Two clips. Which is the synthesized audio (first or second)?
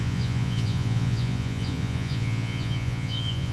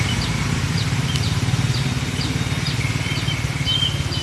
first